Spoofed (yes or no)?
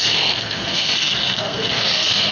yes